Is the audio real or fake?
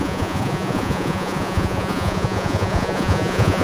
fake